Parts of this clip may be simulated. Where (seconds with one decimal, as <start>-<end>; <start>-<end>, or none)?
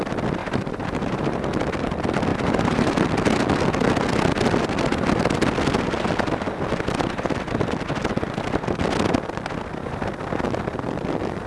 0.4-1.5; 2.3-2.9